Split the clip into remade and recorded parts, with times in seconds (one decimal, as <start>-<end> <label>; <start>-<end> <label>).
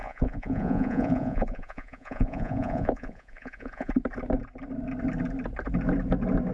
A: 0.0-3.9 remade; 3.9-6.5 recorded